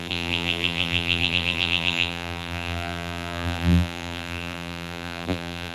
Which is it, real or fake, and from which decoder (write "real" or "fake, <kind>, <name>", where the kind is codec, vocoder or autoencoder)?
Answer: fake, vocoder, BigVGAN v2